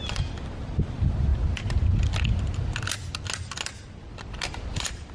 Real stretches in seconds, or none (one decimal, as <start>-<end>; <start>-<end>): 0.0-5.1